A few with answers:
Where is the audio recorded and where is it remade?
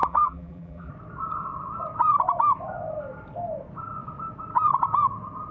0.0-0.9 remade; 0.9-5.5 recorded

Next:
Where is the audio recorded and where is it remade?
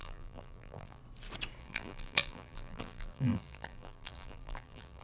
0.0-1.0 remade; 1.0-1.6 recorded; 1.6-5.0 remade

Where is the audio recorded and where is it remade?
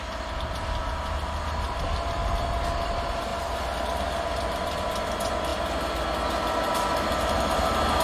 0.0-8.0 recorded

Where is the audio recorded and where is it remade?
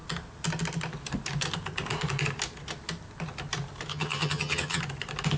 0.0-3.9 recorded; 3.9-4.8 remade; 4.8-5.4 recorded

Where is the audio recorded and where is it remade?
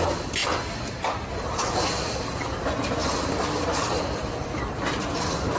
0.0-3.0 recorded; 3.0-4.7 remade; 4.7-5.6 recorded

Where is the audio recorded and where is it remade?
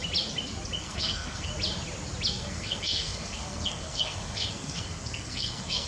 0.0-0.8 recorded; 0.8-1.5 remade; 1.5-2.3 recorded; 2.3-5.9 remade